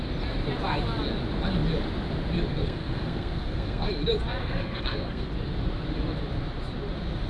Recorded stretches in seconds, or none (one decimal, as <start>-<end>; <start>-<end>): 0.0-2.5; 3.9-4.4; 5.3-7.3